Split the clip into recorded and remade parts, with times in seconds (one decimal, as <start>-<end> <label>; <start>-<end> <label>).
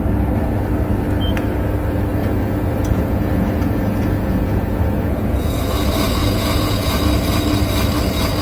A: 0.0-2.2 recorded; 2.2-5.6 remade; 5.6-6.2 recorded; 6.2-7.0 remade; 7.0-8.4 recorded